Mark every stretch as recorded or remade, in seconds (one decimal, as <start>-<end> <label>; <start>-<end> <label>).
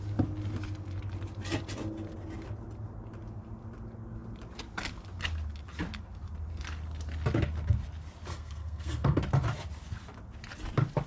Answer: 0.0-8.3 recorded; 8.3-9.2 remade; 9.2-11.1 recorded